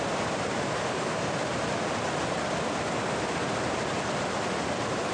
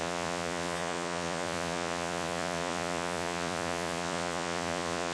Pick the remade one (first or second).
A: second